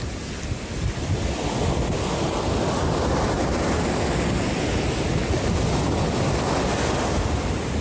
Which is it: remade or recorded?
recorded